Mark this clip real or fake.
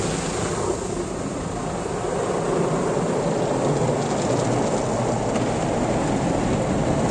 real